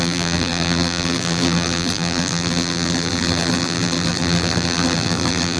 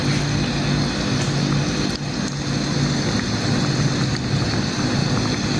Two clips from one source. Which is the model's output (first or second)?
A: first